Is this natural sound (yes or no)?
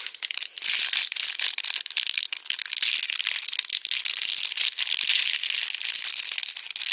yes